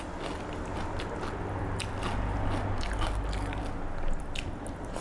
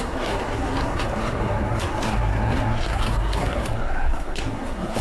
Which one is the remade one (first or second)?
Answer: second